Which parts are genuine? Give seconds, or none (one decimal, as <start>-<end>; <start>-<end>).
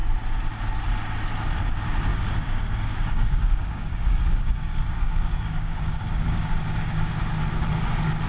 0.0-2.1; 7.1-8.3